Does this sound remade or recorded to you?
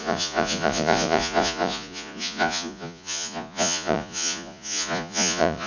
remade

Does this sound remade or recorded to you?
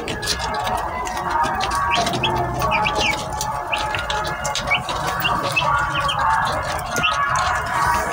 recorded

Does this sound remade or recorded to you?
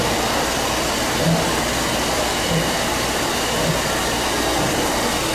recorded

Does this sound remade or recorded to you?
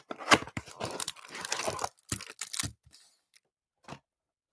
recorded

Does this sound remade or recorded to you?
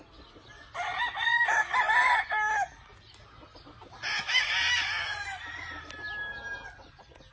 recorded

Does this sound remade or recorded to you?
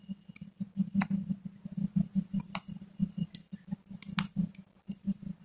recorded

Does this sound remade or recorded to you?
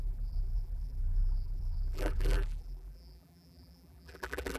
remade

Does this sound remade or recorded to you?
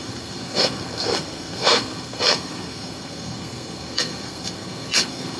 remade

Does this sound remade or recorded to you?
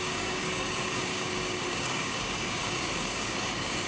remade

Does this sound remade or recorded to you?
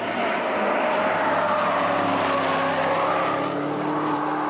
recorded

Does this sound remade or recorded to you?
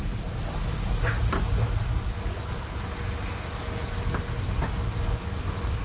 recorded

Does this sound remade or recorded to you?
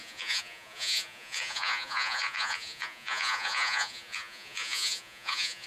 remade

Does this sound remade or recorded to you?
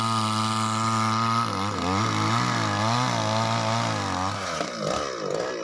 recorded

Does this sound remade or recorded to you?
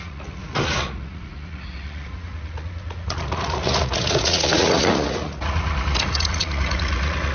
remade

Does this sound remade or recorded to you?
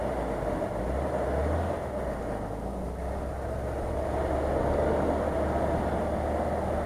recorded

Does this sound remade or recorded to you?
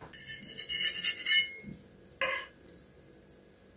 recorded